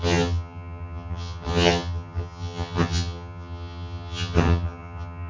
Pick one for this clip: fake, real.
fake